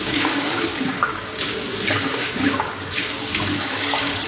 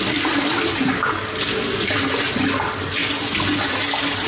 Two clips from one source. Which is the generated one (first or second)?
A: first